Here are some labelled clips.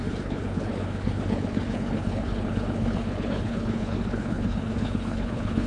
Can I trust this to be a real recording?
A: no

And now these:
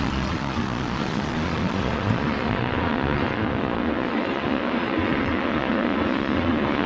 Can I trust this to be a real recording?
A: no